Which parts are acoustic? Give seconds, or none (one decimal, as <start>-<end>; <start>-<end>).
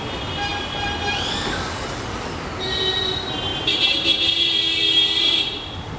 0.0-6.0